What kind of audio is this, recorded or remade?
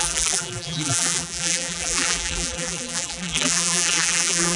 remade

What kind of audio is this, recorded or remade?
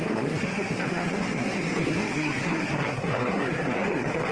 remade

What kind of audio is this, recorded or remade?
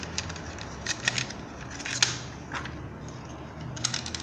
recorded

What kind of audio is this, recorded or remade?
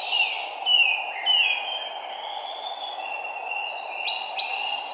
recorded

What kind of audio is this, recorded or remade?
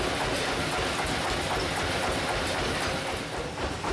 recorded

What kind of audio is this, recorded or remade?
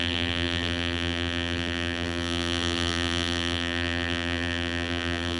remade